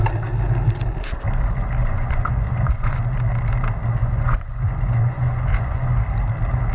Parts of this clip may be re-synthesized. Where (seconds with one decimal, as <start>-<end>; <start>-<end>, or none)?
1.8-3.0; 4.0-6.0